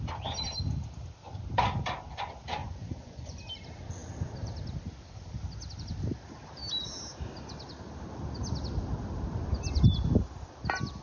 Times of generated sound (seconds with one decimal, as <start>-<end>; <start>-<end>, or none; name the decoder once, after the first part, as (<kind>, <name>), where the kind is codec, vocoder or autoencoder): 2.6-3.5 (vocoder, Vocos)